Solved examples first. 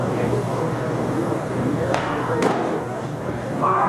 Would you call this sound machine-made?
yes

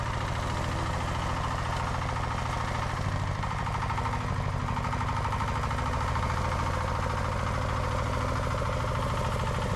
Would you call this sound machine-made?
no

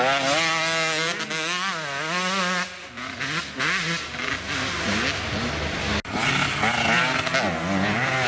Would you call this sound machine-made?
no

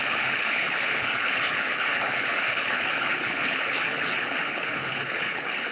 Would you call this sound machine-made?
yes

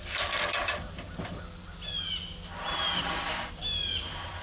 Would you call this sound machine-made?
no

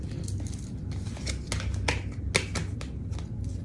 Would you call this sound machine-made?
no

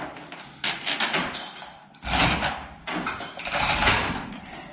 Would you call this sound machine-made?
no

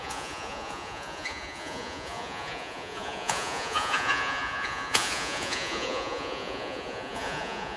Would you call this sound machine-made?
yes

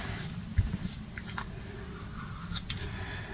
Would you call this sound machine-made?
no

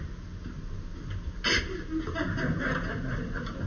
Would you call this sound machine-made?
no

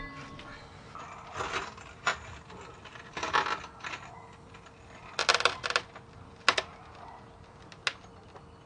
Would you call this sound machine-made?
no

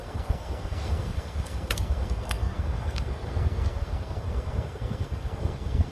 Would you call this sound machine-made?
yes